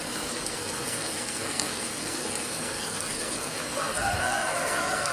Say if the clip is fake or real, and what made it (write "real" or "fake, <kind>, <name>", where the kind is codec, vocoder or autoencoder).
fake, codec, SNAC